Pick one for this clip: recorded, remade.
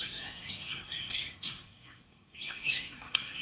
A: remade